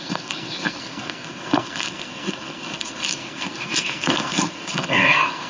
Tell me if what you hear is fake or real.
fake